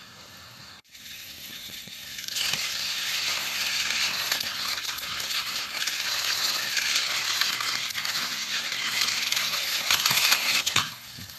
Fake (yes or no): yes